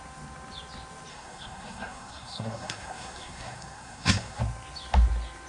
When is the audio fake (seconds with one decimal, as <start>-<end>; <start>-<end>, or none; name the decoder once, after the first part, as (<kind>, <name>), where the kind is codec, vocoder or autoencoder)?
1.1-4.4 (codec, SNAC)